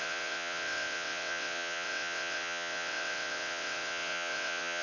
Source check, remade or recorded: remade